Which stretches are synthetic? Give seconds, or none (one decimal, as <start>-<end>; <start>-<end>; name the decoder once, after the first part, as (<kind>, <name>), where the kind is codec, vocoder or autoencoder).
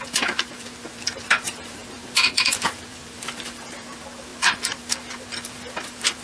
0.0-6.2 (vocoder, BigVGAN v2)